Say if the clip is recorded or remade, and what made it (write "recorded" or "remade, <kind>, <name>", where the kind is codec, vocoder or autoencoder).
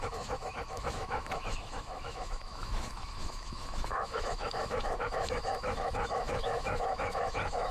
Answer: remade, autoencoder, DAC-VAE